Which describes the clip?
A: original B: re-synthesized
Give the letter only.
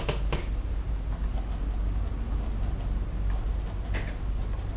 A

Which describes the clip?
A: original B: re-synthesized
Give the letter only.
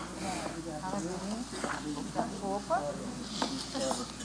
A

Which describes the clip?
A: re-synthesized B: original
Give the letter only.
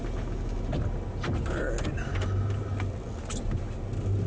B